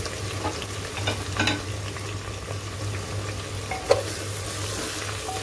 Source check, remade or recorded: recorded